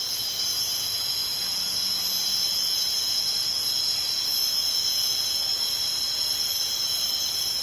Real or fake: real